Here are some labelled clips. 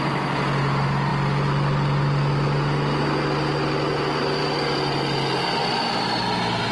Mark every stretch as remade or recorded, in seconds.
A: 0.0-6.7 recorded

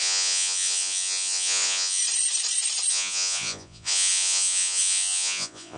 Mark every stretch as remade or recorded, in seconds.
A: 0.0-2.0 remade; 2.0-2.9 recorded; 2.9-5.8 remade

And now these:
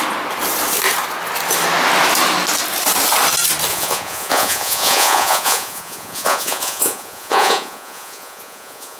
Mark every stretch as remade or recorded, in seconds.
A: 0.0-3.7 recorded; 3.7-9.0 remade

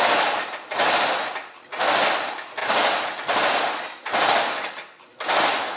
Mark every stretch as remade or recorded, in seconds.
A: 0.0-5.8 recorded